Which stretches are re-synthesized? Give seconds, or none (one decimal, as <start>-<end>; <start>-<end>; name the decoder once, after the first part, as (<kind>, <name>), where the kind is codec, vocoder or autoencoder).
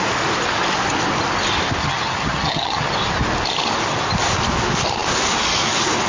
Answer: 1.8-2.9 (vocoder, HiFi-GAN)